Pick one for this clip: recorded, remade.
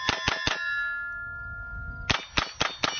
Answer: recorded